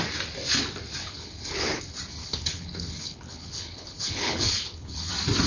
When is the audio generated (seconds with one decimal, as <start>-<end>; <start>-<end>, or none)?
1.0-1.8; 2.2-5.1